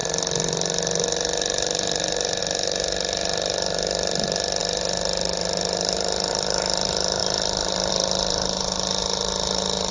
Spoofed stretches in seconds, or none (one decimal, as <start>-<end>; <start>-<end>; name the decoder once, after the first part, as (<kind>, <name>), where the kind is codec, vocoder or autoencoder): none